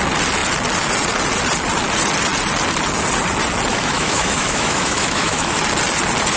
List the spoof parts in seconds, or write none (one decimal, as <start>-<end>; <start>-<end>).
3.7-5.6